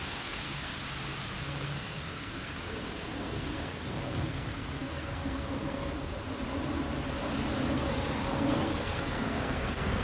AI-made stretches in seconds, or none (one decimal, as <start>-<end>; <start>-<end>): 0.0-0.8; 1.4-6.1; 7.7-10.0